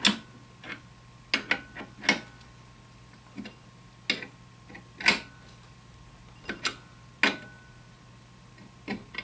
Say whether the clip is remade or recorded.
recorded